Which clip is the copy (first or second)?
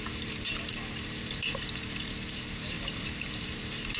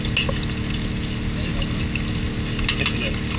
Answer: first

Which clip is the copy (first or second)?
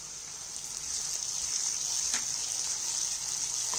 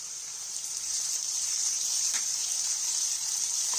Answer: second